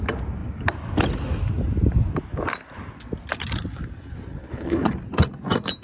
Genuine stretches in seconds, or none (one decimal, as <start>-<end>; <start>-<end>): 0.0-4.4; 4.9-5.8